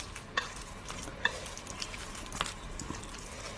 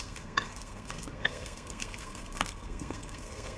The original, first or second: first